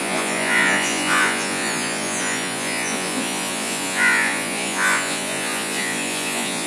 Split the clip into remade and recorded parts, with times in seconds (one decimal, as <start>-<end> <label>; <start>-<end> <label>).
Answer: 0.0-6.7 remade